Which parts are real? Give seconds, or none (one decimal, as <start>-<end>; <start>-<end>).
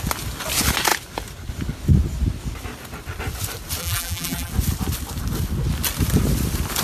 0.0-3.8; 4.5-6.8